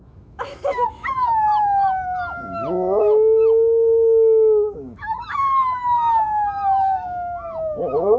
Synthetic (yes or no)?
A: yes